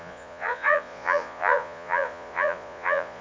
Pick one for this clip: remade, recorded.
remade